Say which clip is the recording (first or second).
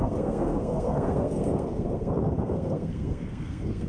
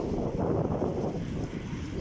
second